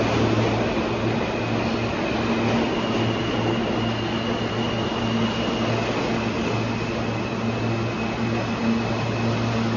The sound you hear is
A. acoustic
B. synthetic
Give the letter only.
A